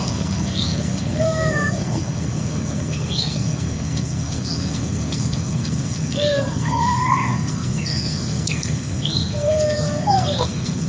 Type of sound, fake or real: fake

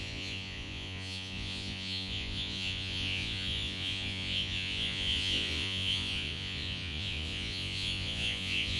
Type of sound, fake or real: fake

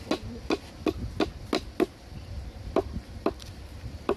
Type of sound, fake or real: real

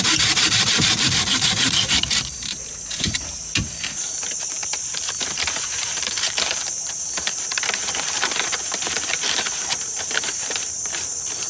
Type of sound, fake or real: fake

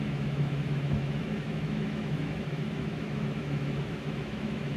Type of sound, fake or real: fake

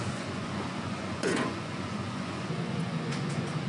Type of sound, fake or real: fake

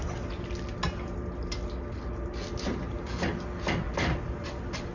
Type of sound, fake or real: real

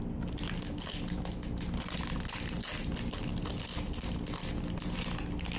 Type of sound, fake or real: real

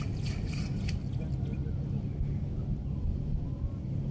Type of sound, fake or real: real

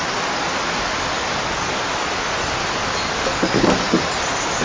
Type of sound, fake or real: real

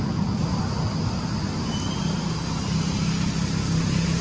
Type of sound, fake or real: real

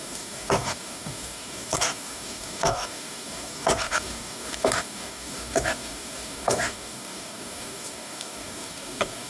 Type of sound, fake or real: fake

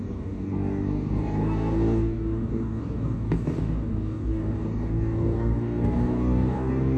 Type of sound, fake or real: fake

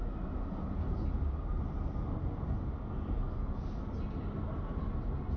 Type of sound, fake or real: real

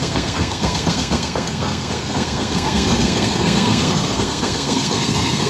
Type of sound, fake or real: fake